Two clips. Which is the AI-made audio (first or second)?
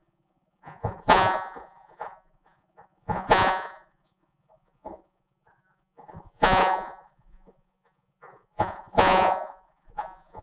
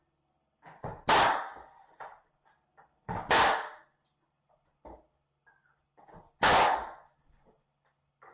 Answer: first